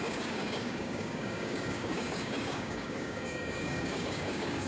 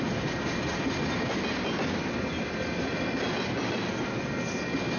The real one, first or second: second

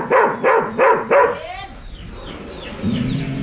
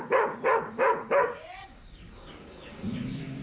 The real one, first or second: first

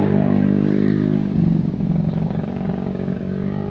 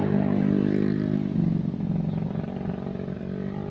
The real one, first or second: second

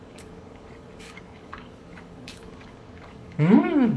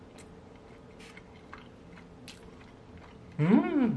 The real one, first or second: second